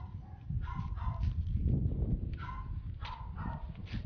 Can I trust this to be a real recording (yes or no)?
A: yes